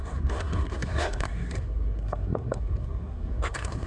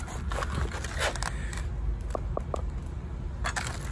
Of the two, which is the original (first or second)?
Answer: second